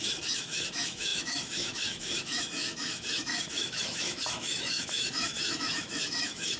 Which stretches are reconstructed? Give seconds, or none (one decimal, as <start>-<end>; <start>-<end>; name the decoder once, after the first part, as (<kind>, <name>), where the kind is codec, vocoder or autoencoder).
0.0-6.6 (autoencoder, DAC-VAE)